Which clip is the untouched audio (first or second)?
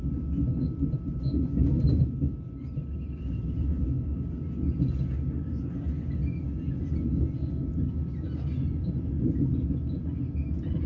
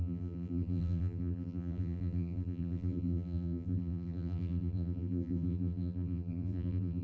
first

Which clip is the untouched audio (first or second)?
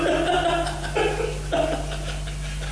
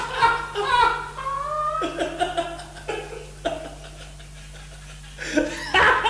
second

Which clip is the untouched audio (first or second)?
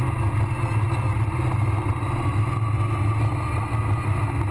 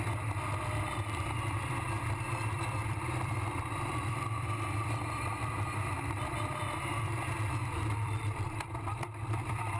first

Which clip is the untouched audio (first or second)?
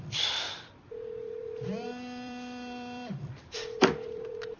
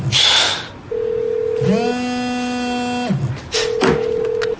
second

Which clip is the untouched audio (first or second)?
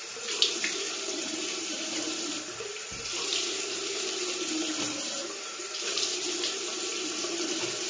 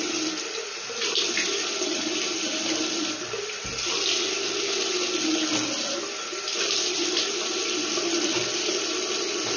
second